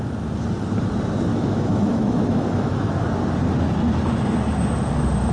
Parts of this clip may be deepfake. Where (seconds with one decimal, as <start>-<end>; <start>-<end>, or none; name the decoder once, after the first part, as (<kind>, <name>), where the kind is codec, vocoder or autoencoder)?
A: 1.3-2.9 (autoencoder, DAC-VAE)